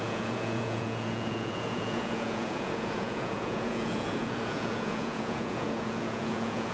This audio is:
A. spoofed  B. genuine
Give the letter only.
A